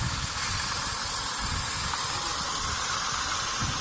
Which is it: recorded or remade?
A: recorded